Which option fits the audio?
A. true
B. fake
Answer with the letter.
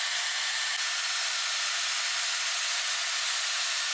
A